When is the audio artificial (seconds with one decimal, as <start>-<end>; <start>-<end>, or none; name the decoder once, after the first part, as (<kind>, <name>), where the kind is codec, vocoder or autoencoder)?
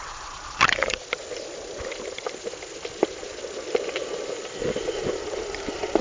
0.0-1.0 (vocoder, BigVGAN v2); 4.6-6.0